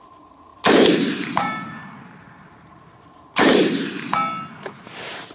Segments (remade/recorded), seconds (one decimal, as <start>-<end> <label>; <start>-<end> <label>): 0.0-0.5 remade; 0.5-1.1 recorded; 1.1-3.9 remade; 3.9-4.8 recorded; 4.8-5.3 remade

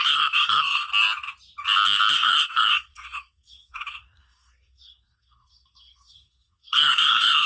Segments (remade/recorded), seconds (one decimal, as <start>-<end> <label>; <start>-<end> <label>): 0.0-0.9 remade; 0.9-2.1 recorded; 2.1-7.5 remade

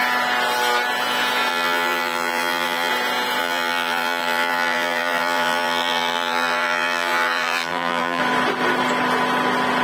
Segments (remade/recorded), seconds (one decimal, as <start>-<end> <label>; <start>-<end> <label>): 0.0-1.5 recorded; 1.5-2.9 remade; 2.9-3.4 recorded; 3.4-8.2 remade; 8.2-9.8 recorded